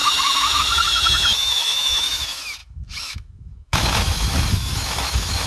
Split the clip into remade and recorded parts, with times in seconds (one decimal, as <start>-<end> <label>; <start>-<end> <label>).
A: 0.0-5.5 remade